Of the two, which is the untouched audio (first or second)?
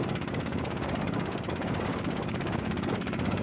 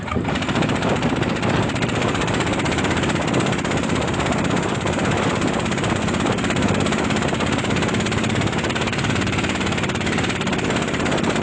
second